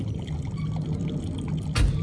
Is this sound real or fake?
real